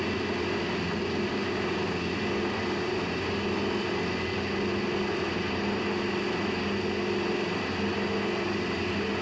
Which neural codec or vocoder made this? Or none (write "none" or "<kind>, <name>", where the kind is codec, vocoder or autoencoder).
none